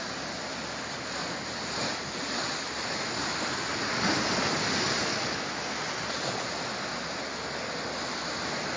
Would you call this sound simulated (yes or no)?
no